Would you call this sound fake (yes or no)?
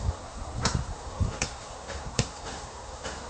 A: yes